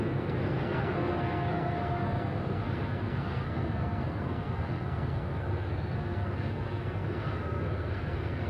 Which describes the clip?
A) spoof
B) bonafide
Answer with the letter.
A